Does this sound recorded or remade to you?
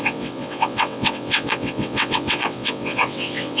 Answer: remade